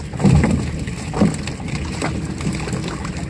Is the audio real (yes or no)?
yes